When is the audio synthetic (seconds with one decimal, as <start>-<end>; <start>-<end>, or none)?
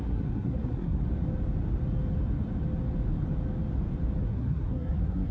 0.0-1.0; 4.2-5.3